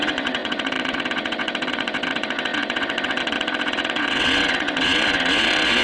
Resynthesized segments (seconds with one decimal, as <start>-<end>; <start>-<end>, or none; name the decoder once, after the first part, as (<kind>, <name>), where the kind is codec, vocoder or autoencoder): 0.0-5.8 (vocoder, WaveNeXt)